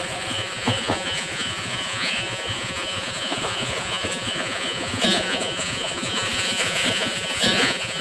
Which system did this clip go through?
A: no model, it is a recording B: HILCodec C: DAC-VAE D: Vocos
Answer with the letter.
D